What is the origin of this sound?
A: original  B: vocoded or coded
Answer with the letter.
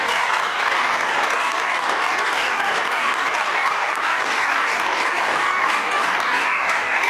B